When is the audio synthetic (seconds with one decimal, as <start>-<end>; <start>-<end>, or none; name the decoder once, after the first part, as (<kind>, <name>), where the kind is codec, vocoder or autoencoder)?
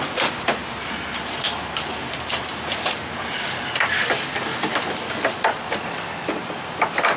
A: none